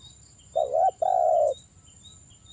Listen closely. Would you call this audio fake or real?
real